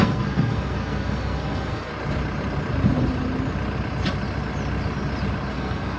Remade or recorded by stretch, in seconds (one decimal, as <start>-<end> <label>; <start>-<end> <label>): 0.0-1.9 remade; 1.9-5.5 recorded; 5.5-6.0 remade